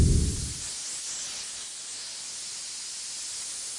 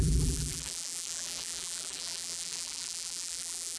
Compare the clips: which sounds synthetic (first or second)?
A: second